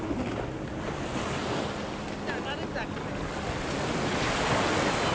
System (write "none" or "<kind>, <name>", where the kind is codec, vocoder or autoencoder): none